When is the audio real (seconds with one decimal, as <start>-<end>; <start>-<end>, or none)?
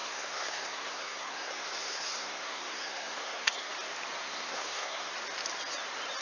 3.7-4.2; 5.1-6.2